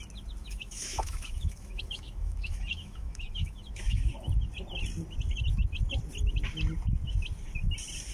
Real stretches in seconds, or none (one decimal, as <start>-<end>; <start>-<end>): 0.0-0.4; 4.1-8.1